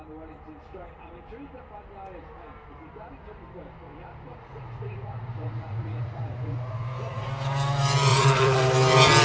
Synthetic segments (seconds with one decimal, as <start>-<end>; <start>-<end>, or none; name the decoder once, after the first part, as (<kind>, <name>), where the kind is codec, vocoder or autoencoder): 4.3-7.3 (vocoder, Vocos); 8.1-8.6